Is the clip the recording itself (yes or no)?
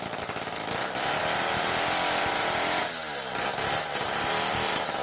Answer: yes